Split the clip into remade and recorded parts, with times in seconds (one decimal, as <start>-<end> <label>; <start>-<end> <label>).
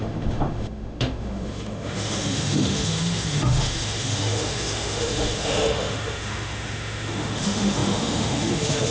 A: 0.0-8.9 remade